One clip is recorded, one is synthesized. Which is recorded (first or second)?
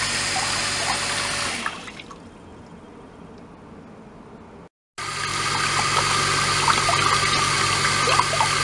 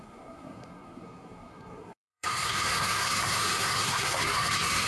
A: first